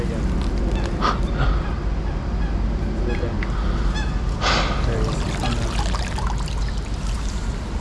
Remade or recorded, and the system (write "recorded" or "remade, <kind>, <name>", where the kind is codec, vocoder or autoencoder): recorded